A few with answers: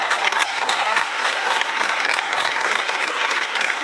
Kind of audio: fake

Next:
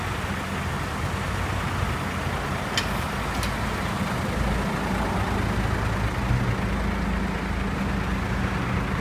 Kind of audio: real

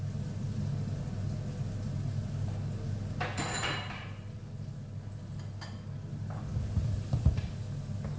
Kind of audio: real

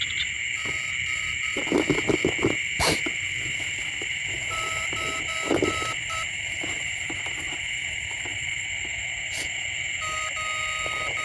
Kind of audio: real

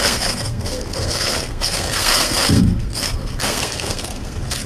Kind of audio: fake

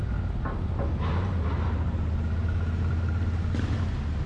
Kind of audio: real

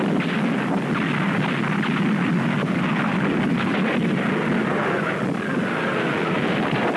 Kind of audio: real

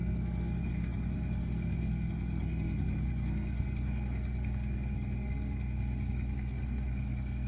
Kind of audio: fake